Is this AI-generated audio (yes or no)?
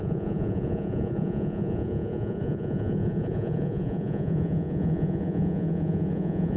yes